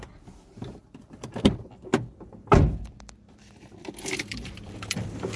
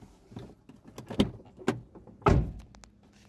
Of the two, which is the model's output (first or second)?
first